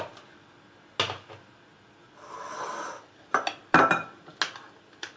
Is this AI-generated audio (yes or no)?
no